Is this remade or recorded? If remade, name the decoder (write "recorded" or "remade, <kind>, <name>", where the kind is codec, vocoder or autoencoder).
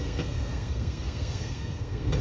remade, codec, SNAC